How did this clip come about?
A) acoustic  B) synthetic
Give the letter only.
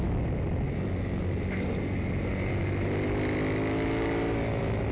A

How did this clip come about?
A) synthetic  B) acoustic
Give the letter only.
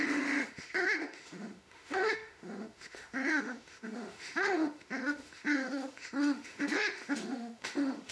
A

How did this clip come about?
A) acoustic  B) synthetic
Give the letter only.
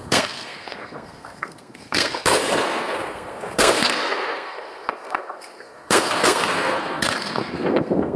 B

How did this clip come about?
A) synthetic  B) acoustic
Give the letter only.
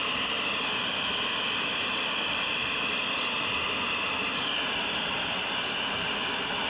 B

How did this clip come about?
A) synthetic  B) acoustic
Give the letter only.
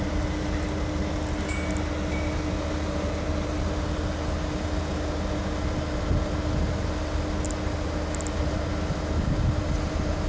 B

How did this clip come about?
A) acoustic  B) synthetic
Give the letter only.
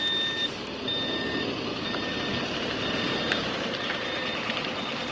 A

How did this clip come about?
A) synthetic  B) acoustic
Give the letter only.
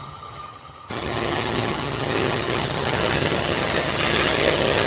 A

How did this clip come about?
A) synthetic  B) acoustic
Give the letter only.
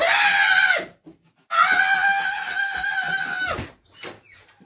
B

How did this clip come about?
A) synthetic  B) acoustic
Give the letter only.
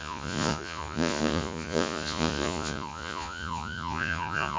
A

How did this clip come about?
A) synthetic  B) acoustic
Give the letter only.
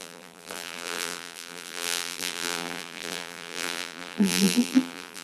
A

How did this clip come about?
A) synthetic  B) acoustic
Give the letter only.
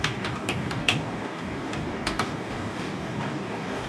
A